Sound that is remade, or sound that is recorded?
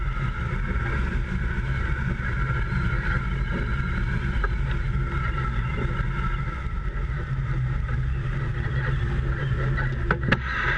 recorded